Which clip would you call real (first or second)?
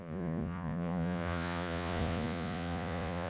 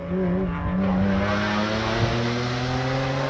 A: second